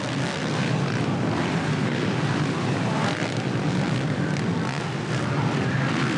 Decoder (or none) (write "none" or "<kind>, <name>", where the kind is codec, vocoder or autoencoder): none